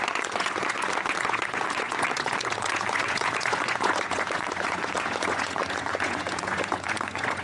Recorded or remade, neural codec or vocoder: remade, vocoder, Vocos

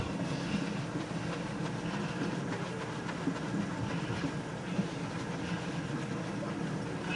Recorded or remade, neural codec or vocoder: recorded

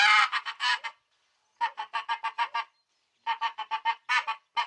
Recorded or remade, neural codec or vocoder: recorded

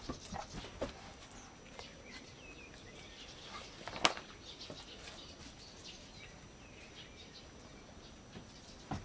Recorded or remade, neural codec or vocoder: recorded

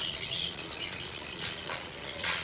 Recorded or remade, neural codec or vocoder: remade, vocoder, Vocos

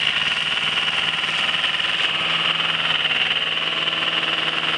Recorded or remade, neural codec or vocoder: recorded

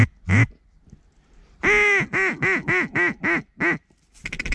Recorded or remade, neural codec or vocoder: recorded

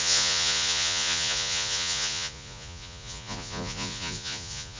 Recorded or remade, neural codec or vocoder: remade, vocoder, Vocos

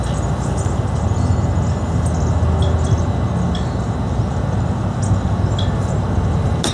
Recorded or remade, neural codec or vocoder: recorded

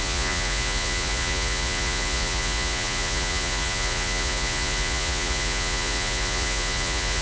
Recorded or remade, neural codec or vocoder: remade, vocoder, Vocos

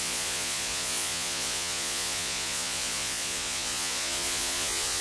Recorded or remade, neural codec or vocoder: remade, vocoder, Vocos